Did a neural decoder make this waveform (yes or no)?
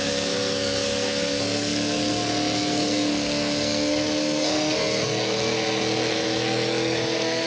yes